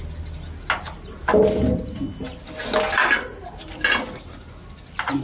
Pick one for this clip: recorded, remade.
recorded